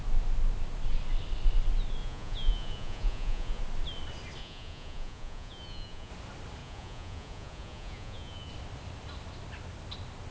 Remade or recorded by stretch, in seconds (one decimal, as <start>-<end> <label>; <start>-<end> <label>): 0.0-2.0 recorded; 2.0-3.6 remade; 3.6-4.4 recorded; 4.4-6.1 remade; 6.1-6.6 recorded; 6.6-8.5 remade; 8.5-10.3 recorded